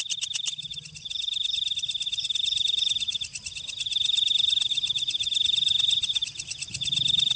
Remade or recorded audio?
recorded